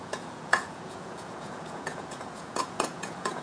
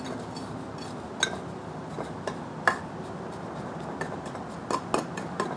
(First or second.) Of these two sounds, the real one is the second